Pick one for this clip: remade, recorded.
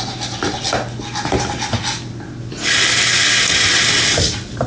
recorded